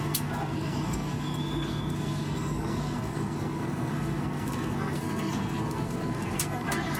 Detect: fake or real fake